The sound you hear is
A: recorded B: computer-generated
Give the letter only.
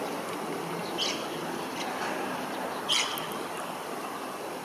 B